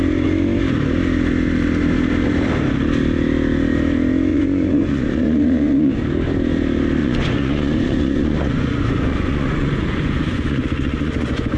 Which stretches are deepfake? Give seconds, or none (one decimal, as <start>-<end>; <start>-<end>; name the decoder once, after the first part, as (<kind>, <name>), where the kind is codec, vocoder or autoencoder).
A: 4.3-6.0 (vocoder, Vocos); 7.0-11.6